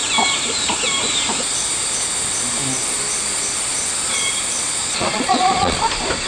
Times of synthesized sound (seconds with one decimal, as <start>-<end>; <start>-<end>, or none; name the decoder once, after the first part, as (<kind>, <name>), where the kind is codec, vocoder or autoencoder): 4.8-5.8 (vocoder, Vocos)